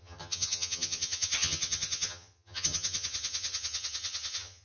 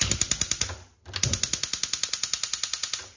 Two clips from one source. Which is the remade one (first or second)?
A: first